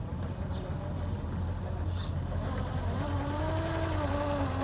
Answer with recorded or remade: recorded